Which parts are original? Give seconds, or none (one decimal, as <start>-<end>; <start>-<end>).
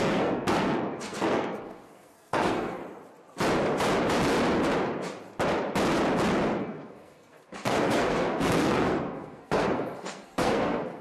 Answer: 2.8-6.6